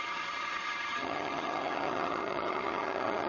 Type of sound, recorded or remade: remade